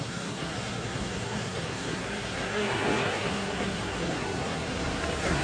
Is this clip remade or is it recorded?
remade